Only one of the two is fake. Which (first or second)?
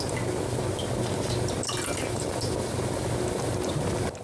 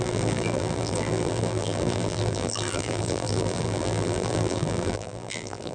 second